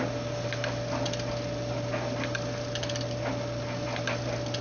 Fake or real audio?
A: real